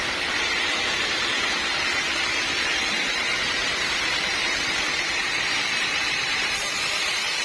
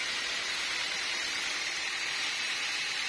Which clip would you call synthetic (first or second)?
first